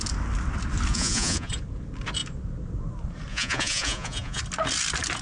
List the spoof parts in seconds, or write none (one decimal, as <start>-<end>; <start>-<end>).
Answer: 0.9-1.5; 3.3-4.4